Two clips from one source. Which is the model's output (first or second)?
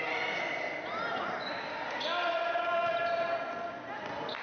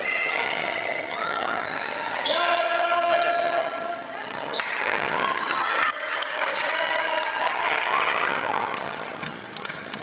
second